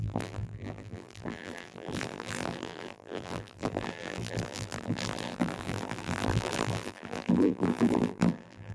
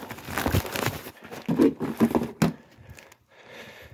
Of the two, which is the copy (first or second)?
first